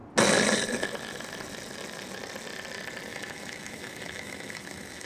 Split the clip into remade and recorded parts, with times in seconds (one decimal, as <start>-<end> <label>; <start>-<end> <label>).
0.0-3.1 recorded; 3.1-5.1 remade